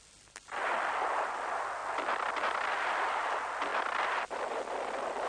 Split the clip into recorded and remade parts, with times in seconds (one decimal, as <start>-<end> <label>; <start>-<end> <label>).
0.0-1.8 remade; 1.8-2.4 recorded; 2.4-5.3 remade